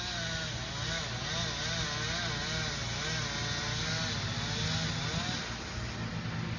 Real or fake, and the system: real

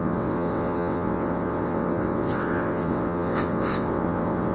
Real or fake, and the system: fake, vocoder, WaveNeXt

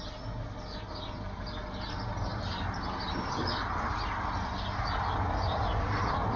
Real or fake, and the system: real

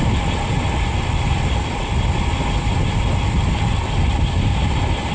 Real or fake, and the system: real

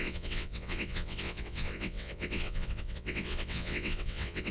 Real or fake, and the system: fake, vocoder, WaveNeXt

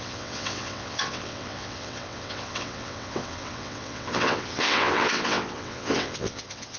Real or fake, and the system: fake, vocoder, WaveNeXt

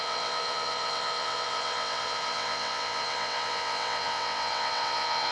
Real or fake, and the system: fake, vocoder, WaveNeXt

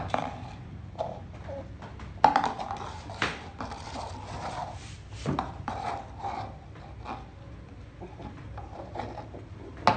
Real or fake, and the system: real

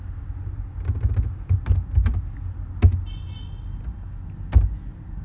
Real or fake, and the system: real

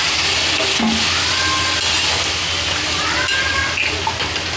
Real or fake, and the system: real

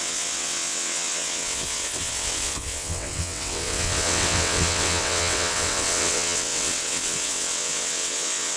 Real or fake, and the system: fake, vocoder, WaveNeXt